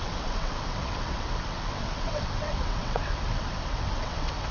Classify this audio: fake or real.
fake